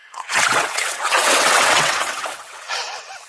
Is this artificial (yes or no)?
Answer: yes